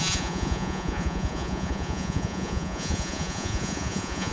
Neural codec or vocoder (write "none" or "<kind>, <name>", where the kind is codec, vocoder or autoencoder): vocoder, Vocos